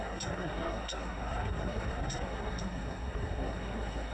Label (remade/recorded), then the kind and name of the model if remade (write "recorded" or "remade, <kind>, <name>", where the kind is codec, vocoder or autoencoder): remade, codec, SNAC